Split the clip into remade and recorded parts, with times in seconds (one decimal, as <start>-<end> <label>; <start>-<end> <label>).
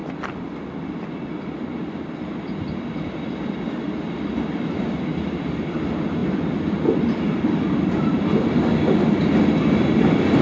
0.0-0.5 remade; 0.5-5.1 recorded; 5.1-5.6 remade; 5.6-10.4 recorded